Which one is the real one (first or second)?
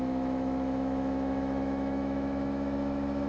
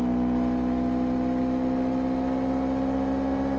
second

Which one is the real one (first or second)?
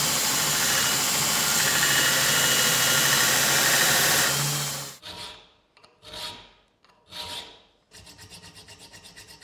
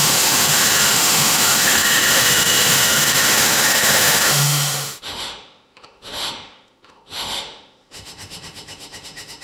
first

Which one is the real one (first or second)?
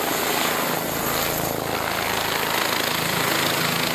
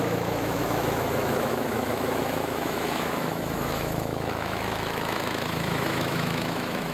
first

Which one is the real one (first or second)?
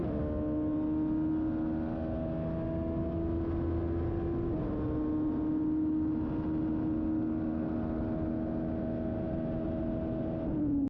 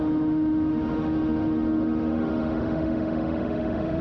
first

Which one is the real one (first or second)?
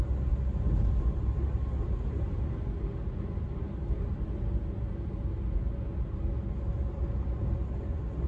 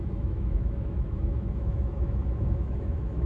first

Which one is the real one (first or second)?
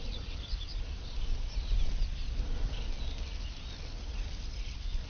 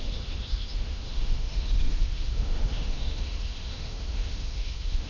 first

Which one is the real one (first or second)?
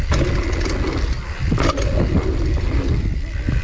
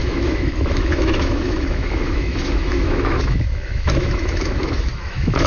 first